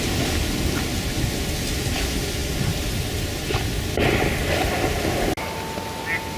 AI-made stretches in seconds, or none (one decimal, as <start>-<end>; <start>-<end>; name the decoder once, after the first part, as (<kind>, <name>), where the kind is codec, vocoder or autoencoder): none